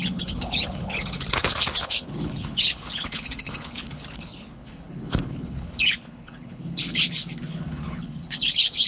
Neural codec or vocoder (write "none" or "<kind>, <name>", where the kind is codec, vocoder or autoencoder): codec, HILCodec